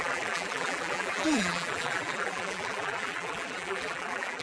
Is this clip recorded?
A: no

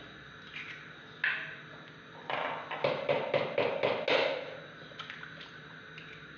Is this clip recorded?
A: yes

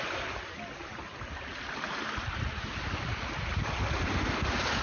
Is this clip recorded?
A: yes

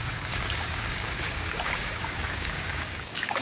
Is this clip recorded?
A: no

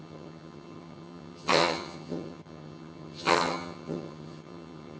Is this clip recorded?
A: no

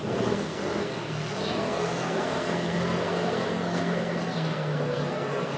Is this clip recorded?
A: no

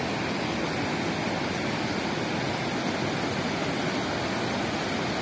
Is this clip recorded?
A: yes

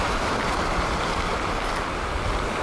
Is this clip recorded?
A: yes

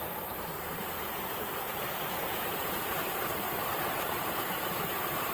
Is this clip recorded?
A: no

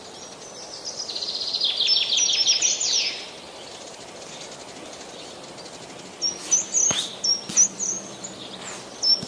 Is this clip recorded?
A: yes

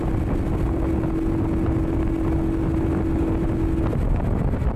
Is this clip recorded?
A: yes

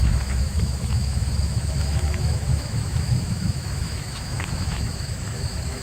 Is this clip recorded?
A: no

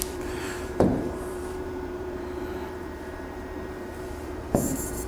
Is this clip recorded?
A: no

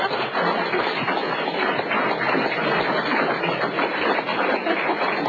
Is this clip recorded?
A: yes